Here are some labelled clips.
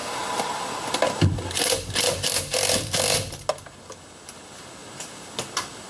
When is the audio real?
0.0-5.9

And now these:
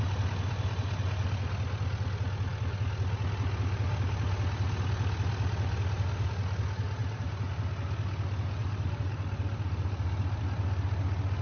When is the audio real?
0.0-7.0; 7.5-8.6; 10.4-11.4

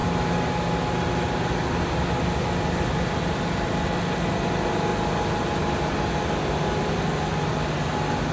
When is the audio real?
0.0-8.3

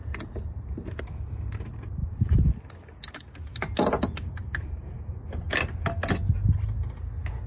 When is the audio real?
1.0-2.0; 3.2-4.4; 5.1-7.5

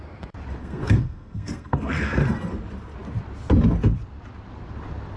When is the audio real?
0.0-0.6; 2.2-5.2

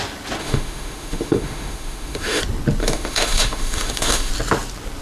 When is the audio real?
0.0-0.4; 2.4-2.8; 4.3-5.0